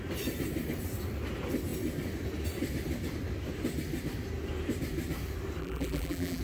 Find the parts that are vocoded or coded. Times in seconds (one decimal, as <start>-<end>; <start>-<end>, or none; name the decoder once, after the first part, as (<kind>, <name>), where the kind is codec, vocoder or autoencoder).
5.6-6.4 (vocoder, BigVGAN v2)